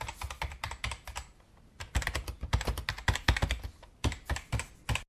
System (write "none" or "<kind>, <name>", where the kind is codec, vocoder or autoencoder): none